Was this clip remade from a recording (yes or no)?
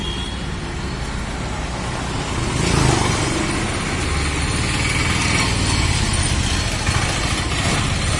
no